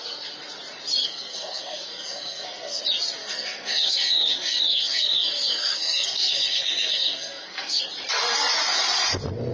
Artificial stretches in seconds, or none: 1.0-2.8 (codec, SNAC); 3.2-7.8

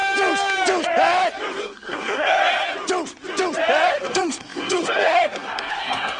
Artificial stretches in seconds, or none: 1.6-2.4 (codec, SNAC); 3.9-6.2